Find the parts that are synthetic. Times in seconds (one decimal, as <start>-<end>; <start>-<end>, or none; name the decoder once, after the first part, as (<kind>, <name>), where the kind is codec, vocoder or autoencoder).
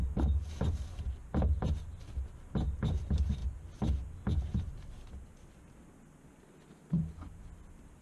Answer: 0.0-1.0 (vocoder, BigVGAN v2)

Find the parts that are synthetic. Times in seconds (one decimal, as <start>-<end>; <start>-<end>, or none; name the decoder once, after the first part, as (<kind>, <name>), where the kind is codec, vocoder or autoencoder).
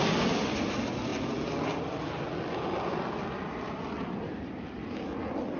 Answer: none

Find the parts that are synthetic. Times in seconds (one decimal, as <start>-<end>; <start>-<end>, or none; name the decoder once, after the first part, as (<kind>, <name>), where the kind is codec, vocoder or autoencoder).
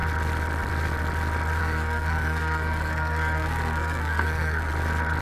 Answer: 1.6-4.7 (codec, SNAC)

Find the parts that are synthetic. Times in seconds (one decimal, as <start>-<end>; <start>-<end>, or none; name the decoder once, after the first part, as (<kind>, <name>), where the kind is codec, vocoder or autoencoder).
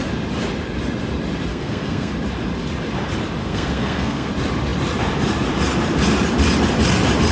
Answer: 1.5-2.1 (codec, SNAC); 3.4-4.3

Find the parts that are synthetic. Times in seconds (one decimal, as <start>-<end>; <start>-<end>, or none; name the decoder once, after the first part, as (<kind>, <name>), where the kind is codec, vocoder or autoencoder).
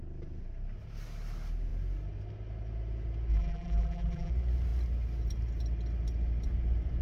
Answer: 3.3-4.3 (vocoder, BigVGAN v2)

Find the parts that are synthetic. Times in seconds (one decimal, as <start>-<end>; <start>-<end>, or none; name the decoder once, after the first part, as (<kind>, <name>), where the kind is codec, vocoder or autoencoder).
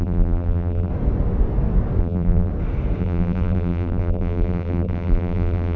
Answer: 0.0-0.9 (vocoder, BigVGAN v2); 2.0-2.5; 3.0-5.8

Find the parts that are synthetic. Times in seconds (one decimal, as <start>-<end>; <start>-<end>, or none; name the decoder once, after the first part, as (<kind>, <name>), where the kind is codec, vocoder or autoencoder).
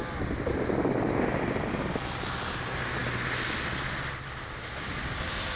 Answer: none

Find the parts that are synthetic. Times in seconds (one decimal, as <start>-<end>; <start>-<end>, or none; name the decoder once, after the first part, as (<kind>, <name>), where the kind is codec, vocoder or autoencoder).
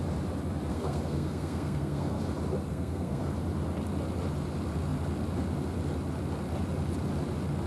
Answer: 0.7-2.2 (codec, SNAC); 2.7-3.2